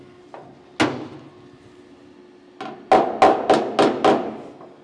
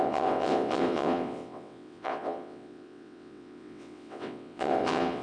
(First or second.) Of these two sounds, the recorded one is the first